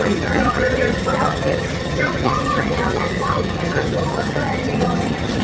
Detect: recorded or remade remade